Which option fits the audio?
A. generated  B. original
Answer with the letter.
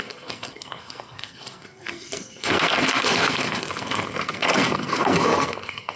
A